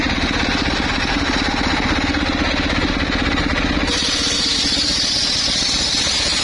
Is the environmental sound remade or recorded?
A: recorded